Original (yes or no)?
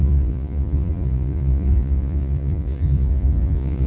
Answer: no